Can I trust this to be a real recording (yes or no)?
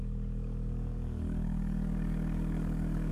no